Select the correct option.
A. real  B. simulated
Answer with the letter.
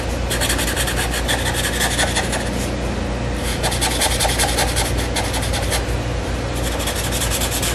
A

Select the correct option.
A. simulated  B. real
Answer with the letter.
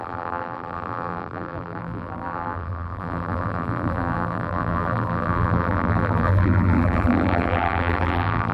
A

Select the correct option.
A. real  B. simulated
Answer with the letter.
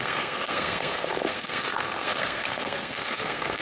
B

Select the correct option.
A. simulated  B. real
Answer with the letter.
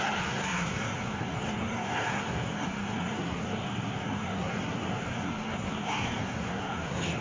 A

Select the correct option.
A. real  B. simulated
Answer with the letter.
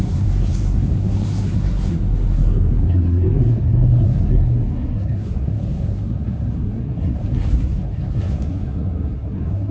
B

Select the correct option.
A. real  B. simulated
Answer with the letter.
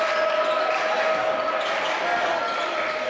A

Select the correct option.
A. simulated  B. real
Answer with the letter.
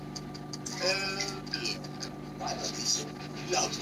B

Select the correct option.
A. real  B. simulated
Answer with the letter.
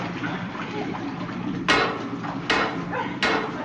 A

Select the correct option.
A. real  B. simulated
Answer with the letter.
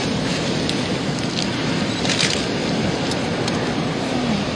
A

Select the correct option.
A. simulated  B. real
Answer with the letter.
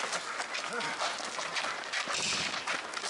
B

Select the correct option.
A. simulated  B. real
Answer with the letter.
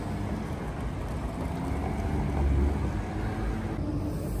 B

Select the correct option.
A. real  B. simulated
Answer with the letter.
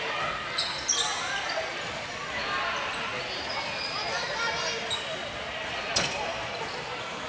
A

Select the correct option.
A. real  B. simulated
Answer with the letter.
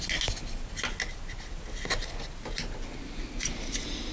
A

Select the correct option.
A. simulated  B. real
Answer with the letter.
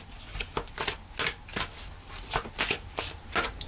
B